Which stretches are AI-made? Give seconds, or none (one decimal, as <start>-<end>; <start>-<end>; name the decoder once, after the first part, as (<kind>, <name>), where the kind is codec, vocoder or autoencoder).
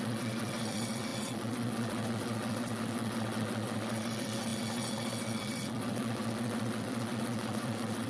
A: 0.0-8.1 (vocoder, WaveNeXt)